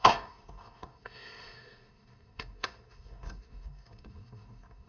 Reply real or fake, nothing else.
fake